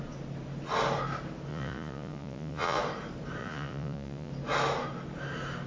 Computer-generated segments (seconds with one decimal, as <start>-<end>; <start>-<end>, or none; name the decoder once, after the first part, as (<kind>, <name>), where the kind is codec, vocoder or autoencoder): 1.5-2.8 (vocoder, Vocos); 3.4-4.3